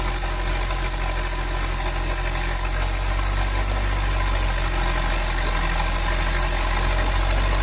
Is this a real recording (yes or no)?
yes